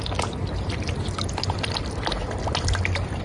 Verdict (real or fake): real